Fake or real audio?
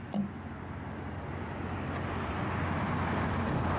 real